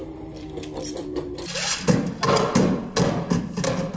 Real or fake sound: real